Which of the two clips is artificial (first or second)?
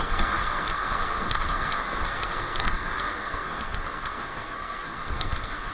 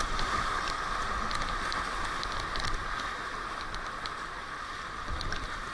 first